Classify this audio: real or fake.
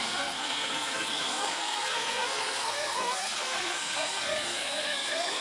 fake